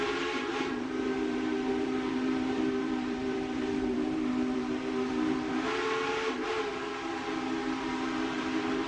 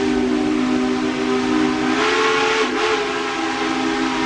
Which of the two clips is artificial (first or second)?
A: first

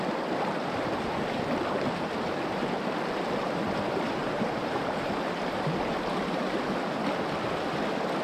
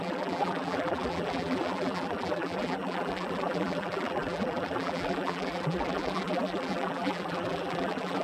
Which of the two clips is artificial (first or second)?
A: second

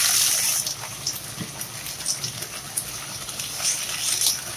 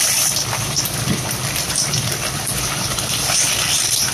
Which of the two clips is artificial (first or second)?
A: second